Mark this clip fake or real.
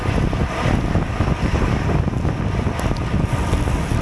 real